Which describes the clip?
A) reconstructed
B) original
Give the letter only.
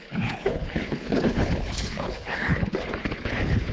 A